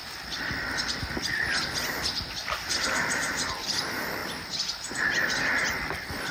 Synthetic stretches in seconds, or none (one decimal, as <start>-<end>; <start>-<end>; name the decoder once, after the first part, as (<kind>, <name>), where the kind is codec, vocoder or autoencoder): 0.0-4.2 (vocoder, BigVGAN v2); 5.4-6.3